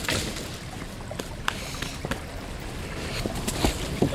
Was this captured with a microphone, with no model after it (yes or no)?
yes